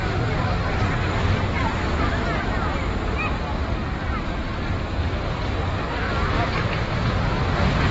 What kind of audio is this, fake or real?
real